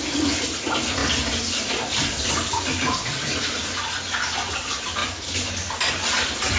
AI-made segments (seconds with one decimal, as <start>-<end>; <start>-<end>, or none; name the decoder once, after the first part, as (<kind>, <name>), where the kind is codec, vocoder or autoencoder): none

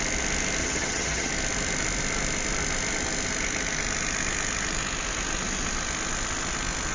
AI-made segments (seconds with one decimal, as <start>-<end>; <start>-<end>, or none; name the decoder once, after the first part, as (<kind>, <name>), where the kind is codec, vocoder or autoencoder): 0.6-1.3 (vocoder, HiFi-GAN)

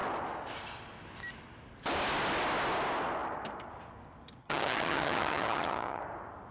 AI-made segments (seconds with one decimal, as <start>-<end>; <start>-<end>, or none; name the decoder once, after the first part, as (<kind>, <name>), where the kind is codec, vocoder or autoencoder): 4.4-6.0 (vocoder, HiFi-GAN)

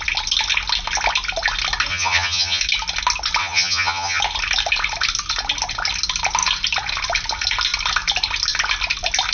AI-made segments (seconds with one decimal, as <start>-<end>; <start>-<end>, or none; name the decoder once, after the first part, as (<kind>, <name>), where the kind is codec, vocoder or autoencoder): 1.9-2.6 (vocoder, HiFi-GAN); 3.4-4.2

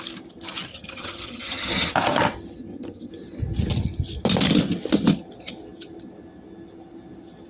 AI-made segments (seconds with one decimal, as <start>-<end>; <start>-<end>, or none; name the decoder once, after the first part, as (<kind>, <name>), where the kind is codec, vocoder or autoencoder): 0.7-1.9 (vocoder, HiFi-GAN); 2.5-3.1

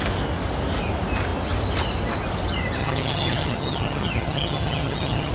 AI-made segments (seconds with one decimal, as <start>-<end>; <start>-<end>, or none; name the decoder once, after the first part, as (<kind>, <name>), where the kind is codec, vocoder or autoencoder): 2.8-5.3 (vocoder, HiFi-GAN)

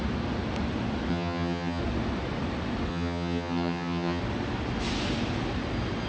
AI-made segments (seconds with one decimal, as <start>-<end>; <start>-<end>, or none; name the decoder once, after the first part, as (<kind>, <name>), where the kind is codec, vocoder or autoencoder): 1.1-1.8 (vocoder, HiFi-GAN); 2.9-4.2

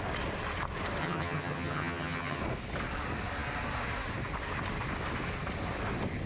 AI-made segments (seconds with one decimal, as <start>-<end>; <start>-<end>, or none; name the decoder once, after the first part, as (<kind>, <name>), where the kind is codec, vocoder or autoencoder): 1.0-2.4 (vocoder, HiFi-GAN)